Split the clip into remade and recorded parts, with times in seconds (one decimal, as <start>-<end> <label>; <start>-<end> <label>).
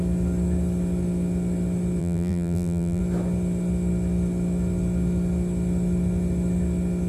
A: 0.0-2.0 recorded; 2.0-3.0 remade; 3.0-7.1 recorded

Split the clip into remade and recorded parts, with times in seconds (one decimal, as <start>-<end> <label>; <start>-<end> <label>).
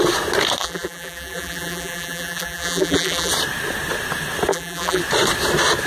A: 0.0-0.6 recorded; 0.6-3.3 remade; 3.3-4.5 recorded; 4.5-5.0 remade; 5.0-5.9 recorded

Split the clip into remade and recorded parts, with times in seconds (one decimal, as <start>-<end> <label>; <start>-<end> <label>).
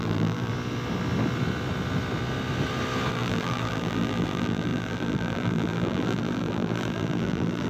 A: 0.0-0.5 remade; 0.5-3.1 recorded; 3.1-7.7 remade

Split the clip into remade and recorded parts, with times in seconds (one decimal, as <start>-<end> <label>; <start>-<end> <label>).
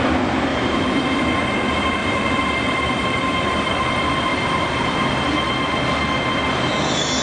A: 0.0-0.5 recorded; 0.5-1.2 remade; 1.2-2.0 recorded; 2.0-3.7 remade; 3.7-4.3 recorded; 4.3-5.5 remade; 5.5-7.2 recorded